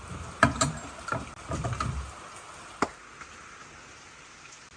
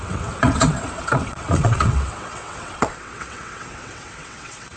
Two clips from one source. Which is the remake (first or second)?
second